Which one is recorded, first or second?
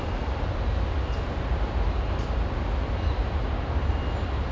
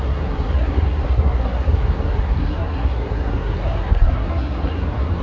first